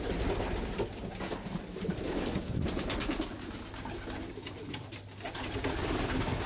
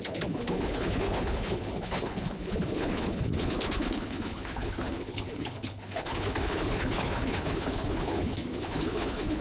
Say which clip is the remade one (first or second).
second